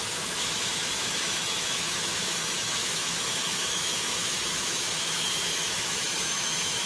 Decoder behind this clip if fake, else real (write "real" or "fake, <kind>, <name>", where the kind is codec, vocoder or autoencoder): fake, autoencoder, DAC-VAE